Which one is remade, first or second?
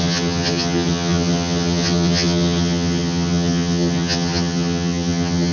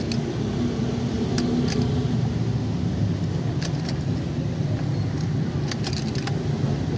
first